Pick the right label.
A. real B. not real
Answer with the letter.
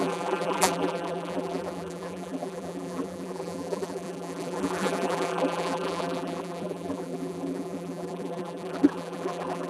B